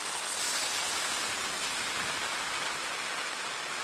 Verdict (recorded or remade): recorded